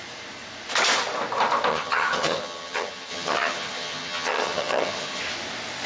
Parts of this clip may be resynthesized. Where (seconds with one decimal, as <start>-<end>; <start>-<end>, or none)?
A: 1.7-5.2